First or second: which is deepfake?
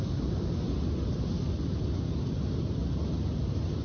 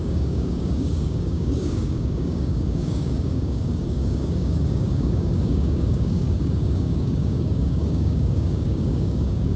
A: second